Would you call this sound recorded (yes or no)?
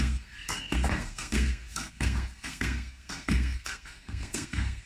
no